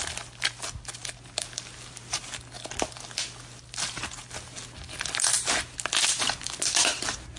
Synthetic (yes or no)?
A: no